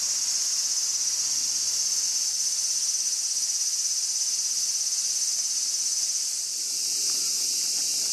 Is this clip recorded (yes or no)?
yes